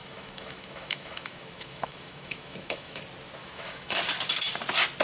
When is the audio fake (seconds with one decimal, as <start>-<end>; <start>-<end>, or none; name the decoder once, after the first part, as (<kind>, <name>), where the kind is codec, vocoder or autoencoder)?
0.0-3.0 (autoencoder, DAC-VAE); 3.4-4.0